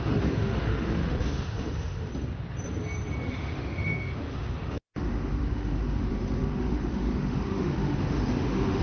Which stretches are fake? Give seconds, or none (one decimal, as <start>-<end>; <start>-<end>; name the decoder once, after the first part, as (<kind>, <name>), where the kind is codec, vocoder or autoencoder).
0.0-2.1 (autoencoder, DAC-VAE); 3.3-8.8